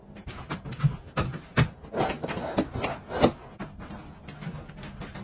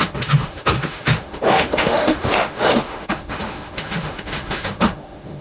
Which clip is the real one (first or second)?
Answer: first